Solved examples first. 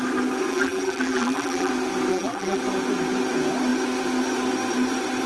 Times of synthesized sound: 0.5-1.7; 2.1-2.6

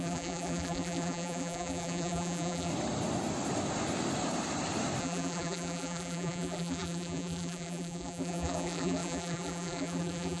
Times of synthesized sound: 0.0-2.7; 5.0-10.4

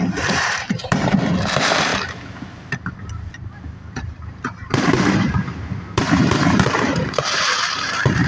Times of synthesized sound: 0.0-8.3

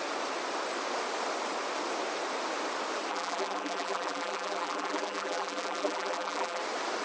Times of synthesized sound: 3.1-6.6

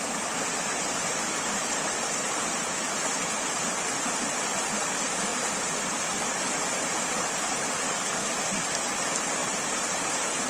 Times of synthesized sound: 9.4-10.1

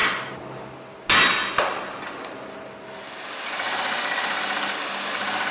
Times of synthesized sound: none

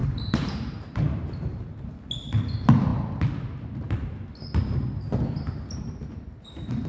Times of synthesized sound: 0.0-1.7